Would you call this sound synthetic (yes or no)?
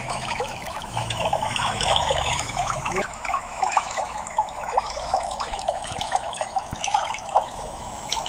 yes